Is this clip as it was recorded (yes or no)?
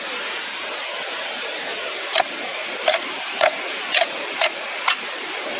yes